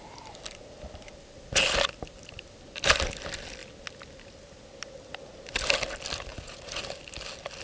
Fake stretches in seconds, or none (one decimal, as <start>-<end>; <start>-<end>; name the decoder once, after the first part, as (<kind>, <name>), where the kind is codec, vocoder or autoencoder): 6.3-6.8 (vocoder, Vocos)